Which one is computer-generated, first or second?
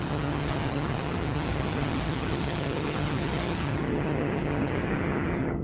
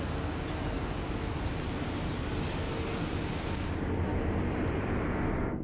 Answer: first